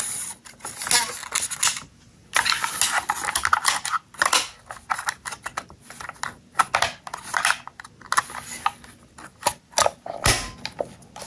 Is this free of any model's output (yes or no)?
yes